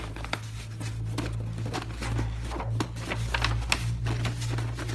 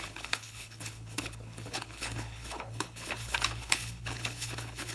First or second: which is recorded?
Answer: first